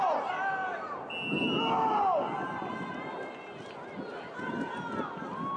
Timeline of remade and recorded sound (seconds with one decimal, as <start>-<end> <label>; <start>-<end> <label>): 0.0-5.6 recorded